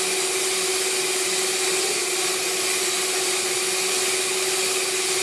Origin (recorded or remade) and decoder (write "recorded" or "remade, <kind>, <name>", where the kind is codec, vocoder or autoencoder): recorded